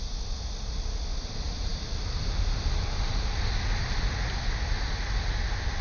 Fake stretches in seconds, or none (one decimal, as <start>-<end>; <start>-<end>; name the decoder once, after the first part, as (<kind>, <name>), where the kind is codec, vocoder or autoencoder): none